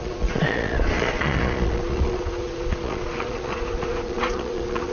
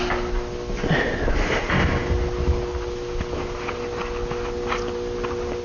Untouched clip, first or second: second